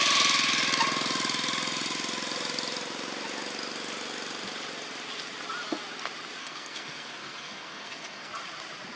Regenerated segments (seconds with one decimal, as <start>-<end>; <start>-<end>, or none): 6.4-8.3